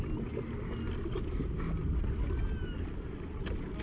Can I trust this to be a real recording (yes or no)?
yes